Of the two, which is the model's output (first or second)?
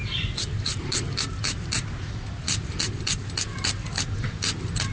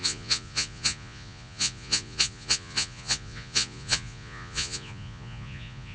second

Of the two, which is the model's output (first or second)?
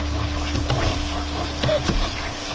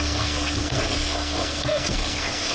second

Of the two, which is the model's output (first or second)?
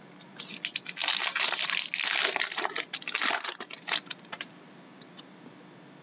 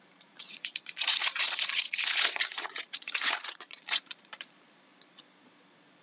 second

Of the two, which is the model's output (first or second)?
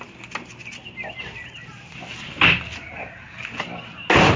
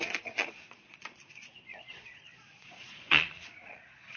second